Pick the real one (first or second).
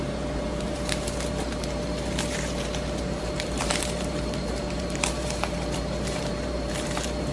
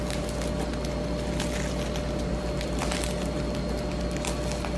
second